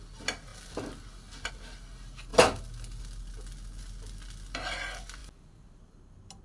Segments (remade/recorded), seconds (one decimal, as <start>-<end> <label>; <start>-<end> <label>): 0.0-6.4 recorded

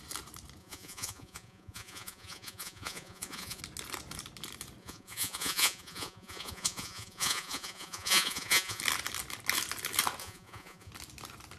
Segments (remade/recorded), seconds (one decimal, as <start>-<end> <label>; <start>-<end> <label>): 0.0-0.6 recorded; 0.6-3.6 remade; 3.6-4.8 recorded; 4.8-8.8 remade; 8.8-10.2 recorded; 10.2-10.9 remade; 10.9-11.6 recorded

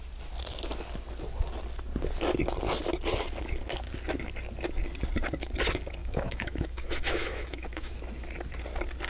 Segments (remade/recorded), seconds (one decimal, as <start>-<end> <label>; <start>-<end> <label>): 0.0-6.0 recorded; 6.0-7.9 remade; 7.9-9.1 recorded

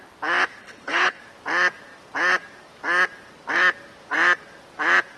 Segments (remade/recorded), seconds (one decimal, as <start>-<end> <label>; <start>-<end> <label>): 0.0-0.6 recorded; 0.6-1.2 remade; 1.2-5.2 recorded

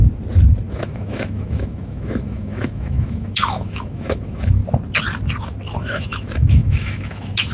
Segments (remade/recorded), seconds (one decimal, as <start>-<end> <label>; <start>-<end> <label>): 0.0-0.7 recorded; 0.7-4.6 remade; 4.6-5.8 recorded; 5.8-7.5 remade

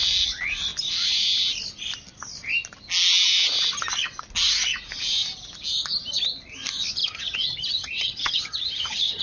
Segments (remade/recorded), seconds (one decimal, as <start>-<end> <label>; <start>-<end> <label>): 0.0-7.0 recorded; 7.0-9.2 remade

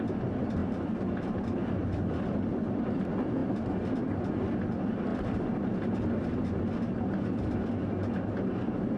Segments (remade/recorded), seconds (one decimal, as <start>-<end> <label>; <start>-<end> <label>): 0.0-9.0 recorded